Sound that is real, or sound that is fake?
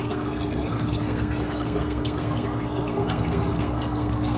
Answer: fake